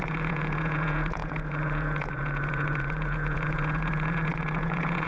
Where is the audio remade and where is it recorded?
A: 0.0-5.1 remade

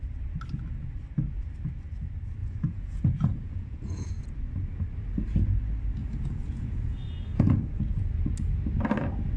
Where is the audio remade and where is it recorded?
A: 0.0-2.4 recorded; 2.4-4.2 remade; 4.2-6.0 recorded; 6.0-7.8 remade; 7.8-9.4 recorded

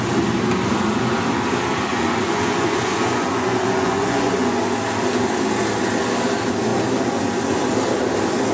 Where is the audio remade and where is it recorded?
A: 0.0-1.9 recorded; 1.9-4.6 remade; 4.6-8.5 recorded